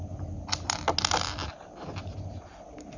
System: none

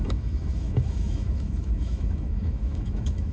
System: autoencoder, DAC-VAE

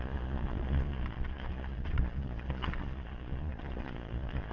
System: vocoder, Vocos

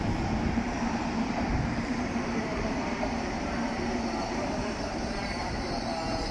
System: vocoder, BigVGAN v2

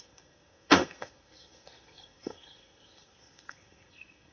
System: codec, SNAC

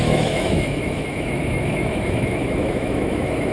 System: autoencoder, DAC-VAE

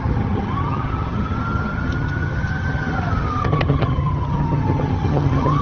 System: vocoder, HiFi-GAN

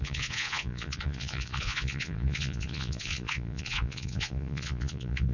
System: vocoder, Vocos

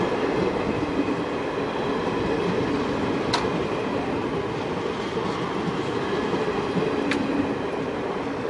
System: none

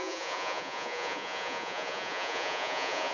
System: vocoder, Vocos